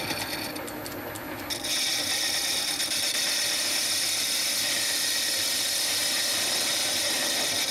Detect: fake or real real